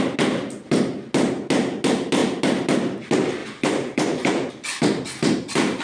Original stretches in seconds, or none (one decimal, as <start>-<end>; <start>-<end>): 0.0-3.4; 4.5-5.8